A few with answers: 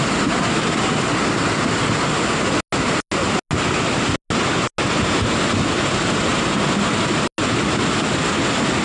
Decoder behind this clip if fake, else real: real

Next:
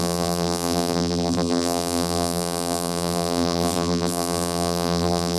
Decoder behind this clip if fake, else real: fake, vocoder, BigVGAN v2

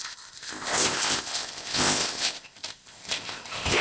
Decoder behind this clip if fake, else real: fake, codec, ZipCodec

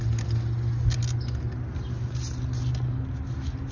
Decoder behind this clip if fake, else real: real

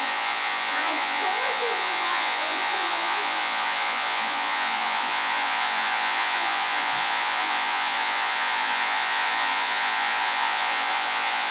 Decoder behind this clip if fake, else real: fake, vocoder, Vocos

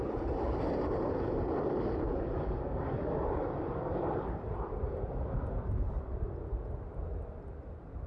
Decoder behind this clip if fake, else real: real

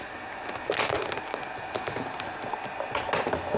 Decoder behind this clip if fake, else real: real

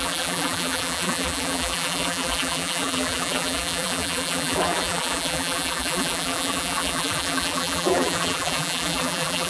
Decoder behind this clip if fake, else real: fake, vocoder, BigVGAN v2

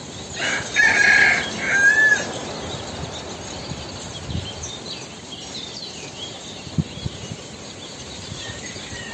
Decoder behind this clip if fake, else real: real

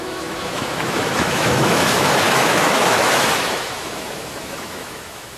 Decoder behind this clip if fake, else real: fake, autoencoder, DAC-VAE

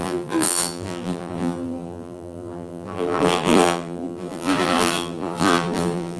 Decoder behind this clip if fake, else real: fake, vocoder, BigVGAN v2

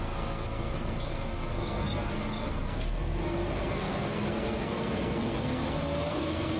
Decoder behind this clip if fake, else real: fake, codec, SNAC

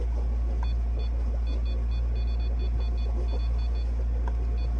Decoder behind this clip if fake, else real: real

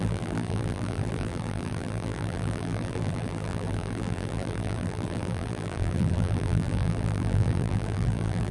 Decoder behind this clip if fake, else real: fake, vocoder, BigVGAN v2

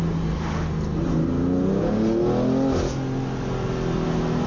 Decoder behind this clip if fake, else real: real